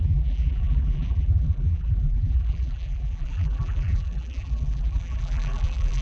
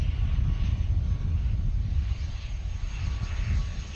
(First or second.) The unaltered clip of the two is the second